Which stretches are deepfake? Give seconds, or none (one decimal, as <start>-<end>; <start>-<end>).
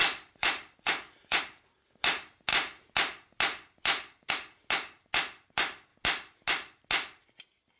0.0-1.4